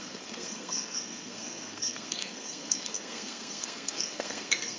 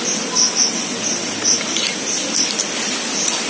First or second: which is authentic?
second